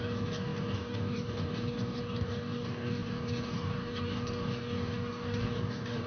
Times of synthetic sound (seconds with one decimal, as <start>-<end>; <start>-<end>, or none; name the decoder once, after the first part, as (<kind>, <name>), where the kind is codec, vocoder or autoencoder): 0.0-6.1 (codec, DAC)